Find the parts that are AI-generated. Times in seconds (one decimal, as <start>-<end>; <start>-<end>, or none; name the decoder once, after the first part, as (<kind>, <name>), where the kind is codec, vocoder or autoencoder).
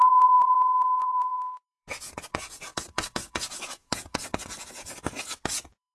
0.0-5.9 (vocoder, Vocos)